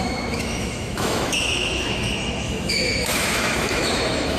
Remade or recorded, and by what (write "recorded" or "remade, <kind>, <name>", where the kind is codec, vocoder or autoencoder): remade, autoencoder, DAC-VAE